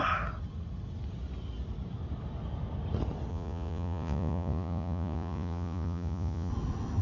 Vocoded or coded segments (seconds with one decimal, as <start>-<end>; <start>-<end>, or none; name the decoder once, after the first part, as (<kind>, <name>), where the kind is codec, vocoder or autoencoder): 3.3-6.5 (vocoder, Vocos)

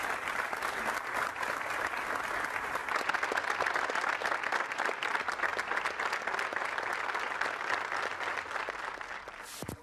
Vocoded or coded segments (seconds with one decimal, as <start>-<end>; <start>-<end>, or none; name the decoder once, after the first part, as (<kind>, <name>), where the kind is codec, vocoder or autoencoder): none

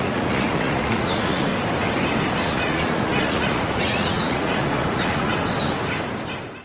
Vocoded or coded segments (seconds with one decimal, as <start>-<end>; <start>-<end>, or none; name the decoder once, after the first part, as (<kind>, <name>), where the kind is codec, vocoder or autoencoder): 0.0-1.5 (vocoder, Vocos); 2.4-5.3

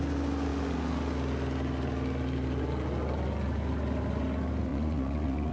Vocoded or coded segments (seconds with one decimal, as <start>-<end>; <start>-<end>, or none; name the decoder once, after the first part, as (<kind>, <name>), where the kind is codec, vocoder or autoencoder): 4.7-5.5 (vocoder, Vocos)

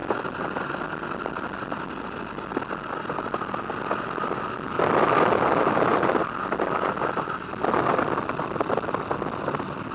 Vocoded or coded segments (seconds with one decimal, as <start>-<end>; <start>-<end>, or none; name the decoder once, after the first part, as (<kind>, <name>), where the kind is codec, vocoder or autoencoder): none

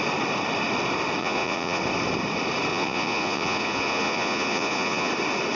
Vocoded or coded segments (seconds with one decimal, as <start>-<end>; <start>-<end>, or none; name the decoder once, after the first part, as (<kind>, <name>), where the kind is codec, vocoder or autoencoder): 1.2-1.8 (vocoder, Vocos); 2.7-5.1